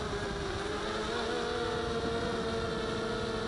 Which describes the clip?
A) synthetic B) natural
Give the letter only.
B